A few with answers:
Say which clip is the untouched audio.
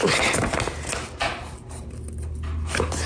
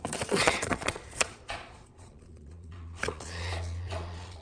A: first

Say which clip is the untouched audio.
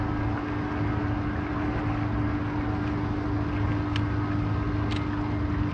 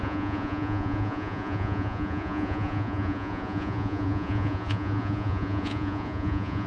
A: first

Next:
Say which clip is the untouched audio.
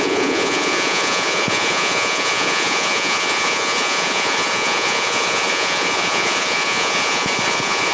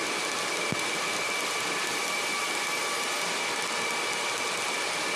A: second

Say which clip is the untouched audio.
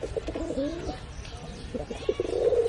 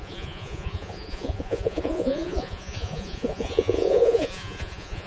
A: first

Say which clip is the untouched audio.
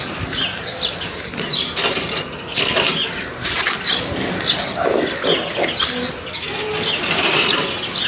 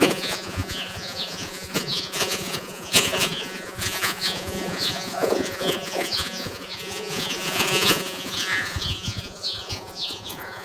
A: first